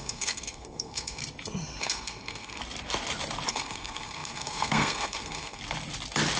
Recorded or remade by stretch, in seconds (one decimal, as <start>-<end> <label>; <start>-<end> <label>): 0.0-1.2 remade; 1.2-1.8 recorded; 1.8-2.6 remade; 2.6-3.5 recorded; 3.5-5.6 remade; 5.6-6.4 recorded